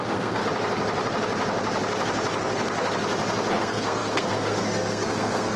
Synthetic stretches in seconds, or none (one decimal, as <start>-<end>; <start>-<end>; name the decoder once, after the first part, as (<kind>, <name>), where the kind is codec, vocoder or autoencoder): 0.0-0.4 (codec, SNAC); 3.6-5.6